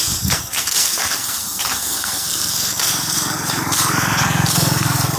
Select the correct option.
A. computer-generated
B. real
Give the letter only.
A